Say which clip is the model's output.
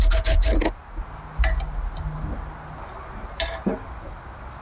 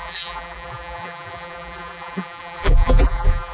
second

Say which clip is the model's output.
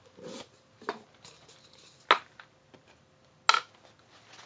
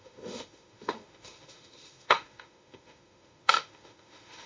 second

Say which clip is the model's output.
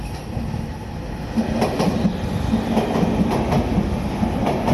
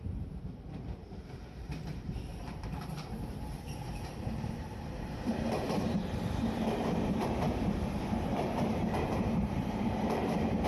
second